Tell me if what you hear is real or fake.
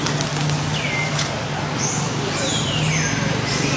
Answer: real